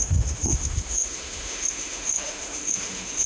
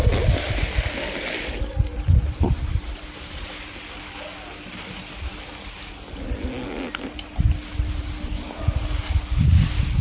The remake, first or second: first